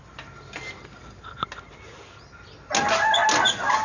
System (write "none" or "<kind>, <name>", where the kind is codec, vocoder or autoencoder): none